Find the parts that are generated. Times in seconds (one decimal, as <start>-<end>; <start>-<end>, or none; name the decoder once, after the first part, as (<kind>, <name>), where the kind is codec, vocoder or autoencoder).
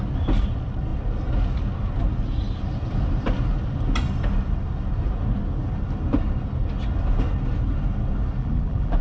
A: 8.4-9.0 (vocoder, BigVGAN v2)